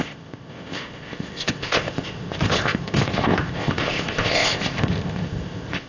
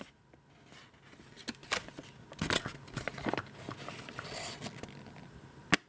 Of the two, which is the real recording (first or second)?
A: second